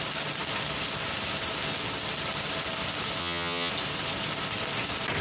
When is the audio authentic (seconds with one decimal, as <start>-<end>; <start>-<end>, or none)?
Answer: 0.0-3.2; 3.7-5.2